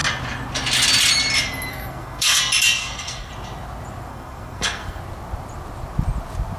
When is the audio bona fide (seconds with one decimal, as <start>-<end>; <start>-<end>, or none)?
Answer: 0.0-1.7; 2.4-2.8; 3.3-4.1; 5.0-6.6